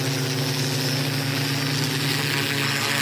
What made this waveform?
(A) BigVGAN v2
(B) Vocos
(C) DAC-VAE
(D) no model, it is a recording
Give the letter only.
D